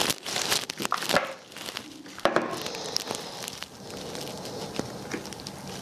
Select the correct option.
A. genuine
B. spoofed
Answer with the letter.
A